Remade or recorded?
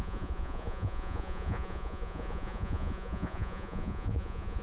remade